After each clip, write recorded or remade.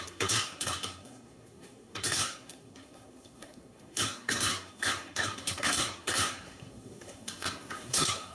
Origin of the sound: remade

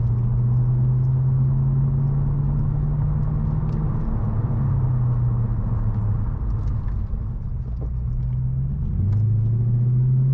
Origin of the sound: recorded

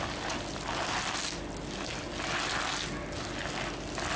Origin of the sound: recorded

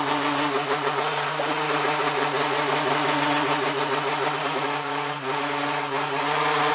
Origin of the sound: recorded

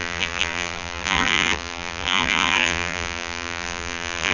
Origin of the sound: remade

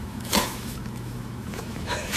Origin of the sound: remade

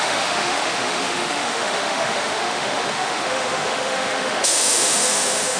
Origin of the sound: remade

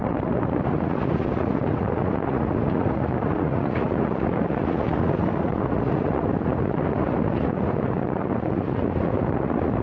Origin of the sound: remade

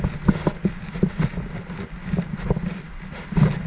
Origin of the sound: recorded